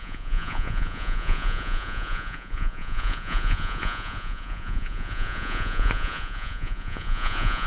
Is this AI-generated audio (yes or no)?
yes